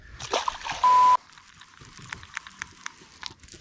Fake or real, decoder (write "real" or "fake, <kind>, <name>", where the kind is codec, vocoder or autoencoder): real